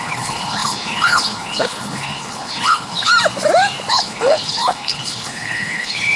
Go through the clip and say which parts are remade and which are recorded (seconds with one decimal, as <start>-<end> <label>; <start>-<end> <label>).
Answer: 0.0-3.1 remade; 3.1-3.9 recorded; 3.9-6.2 remade